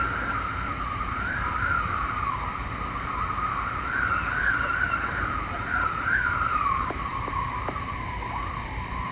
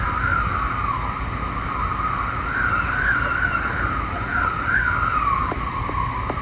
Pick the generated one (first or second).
first